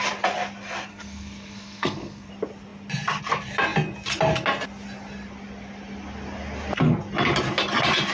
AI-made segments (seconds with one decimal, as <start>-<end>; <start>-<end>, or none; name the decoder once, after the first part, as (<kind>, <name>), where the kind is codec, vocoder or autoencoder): 0.9-2.3 (codec, SNAC)